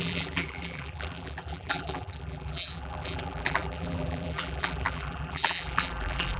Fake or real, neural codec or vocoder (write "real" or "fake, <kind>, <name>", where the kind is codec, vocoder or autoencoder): fake, vocoder, BigVGAN v2